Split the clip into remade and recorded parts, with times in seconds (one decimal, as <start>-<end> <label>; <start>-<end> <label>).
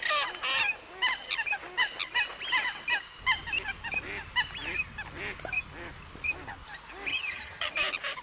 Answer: 0.0-7.1 recorded; 7.1-7.7 remade; 7.7-8.2 recorded